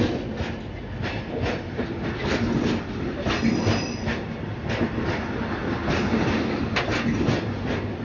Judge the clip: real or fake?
real